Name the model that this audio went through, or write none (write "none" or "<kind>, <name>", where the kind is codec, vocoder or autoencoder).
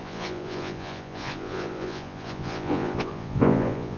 vocoder, Vocos